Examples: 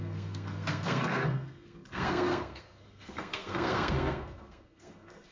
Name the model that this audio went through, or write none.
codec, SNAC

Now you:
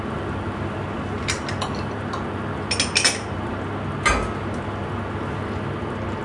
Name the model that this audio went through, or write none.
none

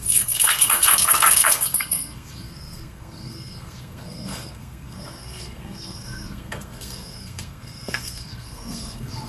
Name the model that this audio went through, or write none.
codec, SNAC